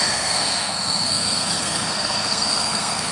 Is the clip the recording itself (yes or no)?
no